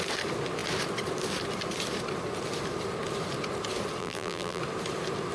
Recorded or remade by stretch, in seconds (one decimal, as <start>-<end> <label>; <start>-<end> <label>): 0.0-4.0 recorded; 4.0-4.6 remade; 4.6-5.3 recorded

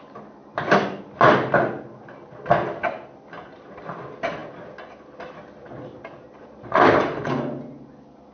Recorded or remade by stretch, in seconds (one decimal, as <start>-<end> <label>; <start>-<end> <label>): 0.0-0.4 recorded; 0.4-1.0 remade; 1.0-8.3 recorded

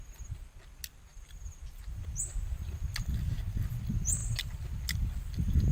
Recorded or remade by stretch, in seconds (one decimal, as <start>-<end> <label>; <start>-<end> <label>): 0.0-1.1 recorded; 1.1-2.3 remade; 2.3-5.7 recorded

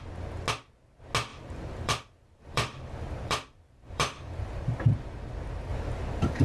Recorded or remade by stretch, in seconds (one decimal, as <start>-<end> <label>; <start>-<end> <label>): 0.0-1.3 recorded; 1.3-5.1 remade; 5.1-5.7 recorded; 5.7-6.4 remade